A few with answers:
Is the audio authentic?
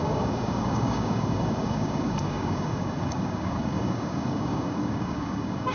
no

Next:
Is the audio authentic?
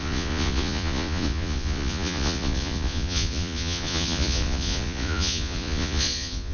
no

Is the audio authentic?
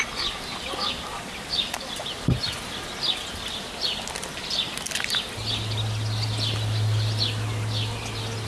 yes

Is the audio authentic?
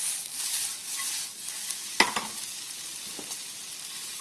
yes